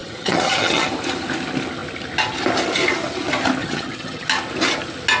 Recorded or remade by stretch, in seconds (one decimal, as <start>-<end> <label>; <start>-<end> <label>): 0.0-0.9 remade; 0.9-3.6 recorded; 3.6-4.3 remade; 4.3-5.2 recorded